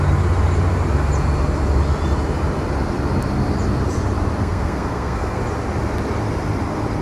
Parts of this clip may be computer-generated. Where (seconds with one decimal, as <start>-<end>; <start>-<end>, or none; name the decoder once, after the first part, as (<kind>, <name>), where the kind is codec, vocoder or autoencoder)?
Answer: 4.4-5.4 (codec, SNAC)